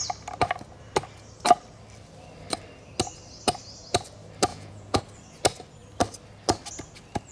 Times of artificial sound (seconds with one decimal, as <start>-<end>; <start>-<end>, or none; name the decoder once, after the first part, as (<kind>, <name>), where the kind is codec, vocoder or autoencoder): 4.5-5.0 (vocoder, Vocos)